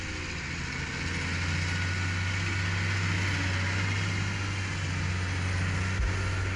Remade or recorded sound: recorded